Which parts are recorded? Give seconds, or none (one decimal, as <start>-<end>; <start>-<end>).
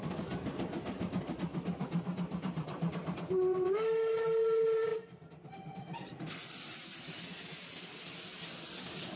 0.0-9.2